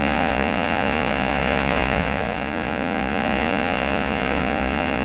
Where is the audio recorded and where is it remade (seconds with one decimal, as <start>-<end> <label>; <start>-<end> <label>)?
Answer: 0.0-5.0 remade